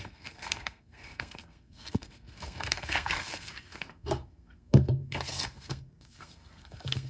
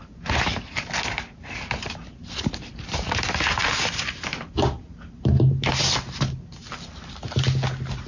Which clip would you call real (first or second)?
second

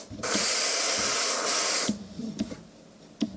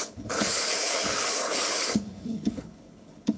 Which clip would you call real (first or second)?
first